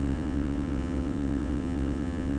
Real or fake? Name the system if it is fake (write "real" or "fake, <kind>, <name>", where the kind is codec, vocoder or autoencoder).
fake, vocoder, WaveNeXt